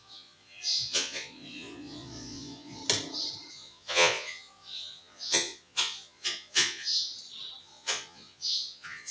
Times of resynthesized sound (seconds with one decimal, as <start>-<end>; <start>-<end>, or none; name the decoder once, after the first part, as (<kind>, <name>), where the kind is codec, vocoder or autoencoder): 0.0-2.8 (vocoder, Vocos); 3.5-7.1; 7.6-9.1